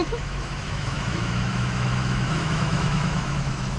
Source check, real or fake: fake